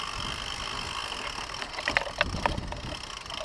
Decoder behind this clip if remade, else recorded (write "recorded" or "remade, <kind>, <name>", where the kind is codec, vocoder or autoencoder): recorded